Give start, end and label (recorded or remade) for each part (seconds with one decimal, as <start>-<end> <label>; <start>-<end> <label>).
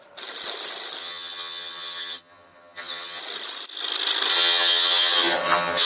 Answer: 0.0-1.0 recorded; 1.0-3.2 remade; 3.2-4.3 recorded; 4.3-5.9 remade